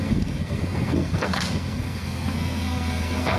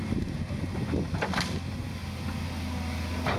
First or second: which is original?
second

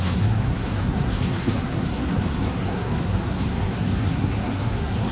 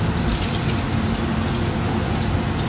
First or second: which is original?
second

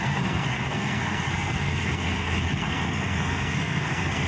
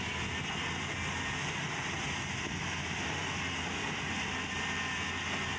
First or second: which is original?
second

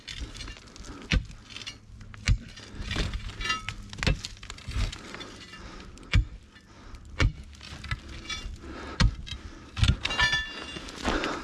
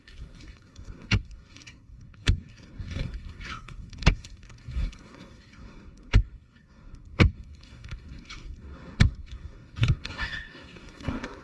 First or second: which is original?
first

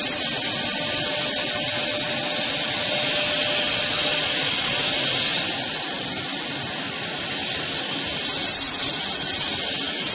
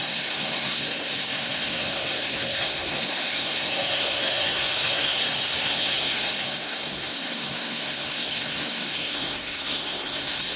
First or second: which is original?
first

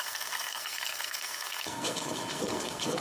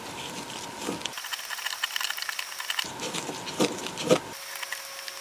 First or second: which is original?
second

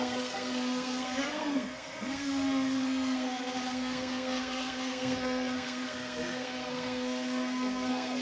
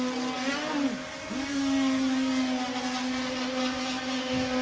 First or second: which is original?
second